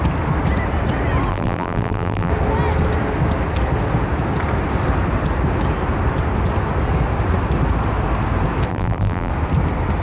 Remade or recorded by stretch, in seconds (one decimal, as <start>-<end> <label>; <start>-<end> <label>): 0.0-1.3 recorded; 1.3-2.3 remade; 2.3-8.7 recorded; 8.7-9.3 remade; 9.3-10.0 recorded